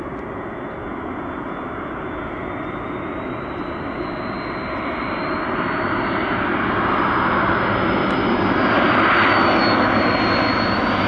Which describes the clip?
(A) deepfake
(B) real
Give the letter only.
B